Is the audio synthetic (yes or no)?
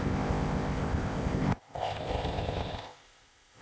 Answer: yes